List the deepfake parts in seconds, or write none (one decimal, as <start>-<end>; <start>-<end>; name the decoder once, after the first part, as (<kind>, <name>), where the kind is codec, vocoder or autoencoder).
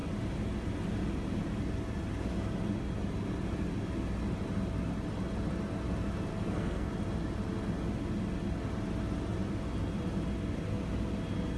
6.3-6.9 (codec, SNAC)